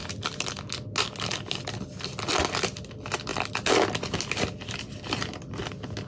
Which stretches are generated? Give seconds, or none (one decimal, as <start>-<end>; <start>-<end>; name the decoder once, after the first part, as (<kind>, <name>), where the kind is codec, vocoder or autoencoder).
none